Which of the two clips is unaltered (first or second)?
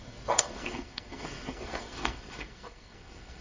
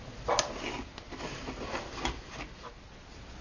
second